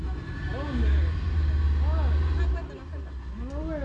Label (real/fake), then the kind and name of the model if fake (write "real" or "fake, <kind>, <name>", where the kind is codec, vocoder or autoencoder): real